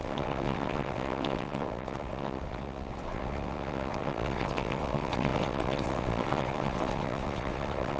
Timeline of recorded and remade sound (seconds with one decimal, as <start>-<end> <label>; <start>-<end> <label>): 0.0-8.0 remade